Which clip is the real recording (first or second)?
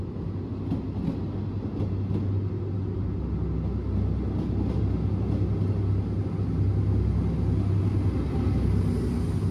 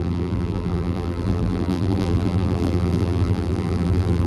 first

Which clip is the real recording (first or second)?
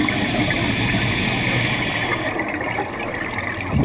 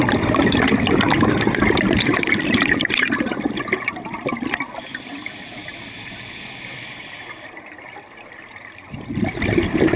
first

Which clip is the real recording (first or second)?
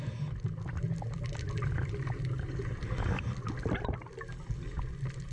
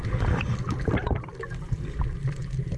first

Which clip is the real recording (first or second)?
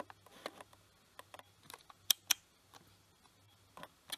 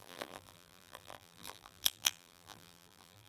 first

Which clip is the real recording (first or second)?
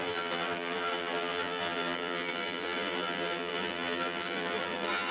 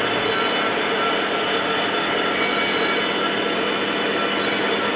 second